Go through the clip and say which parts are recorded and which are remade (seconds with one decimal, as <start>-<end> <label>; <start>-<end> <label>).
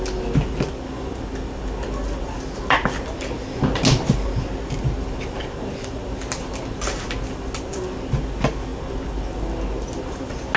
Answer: 0.0-10.6 recorded